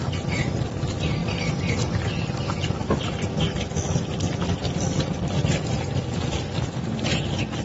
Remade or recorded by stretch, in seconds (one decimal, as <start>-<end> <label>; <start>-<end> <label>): 0.0-1.2 recorded; 1.2-2.1 remade; 2.1-2.8 recorded; 2.8-3.4 remade; 3.4-7.6 recorded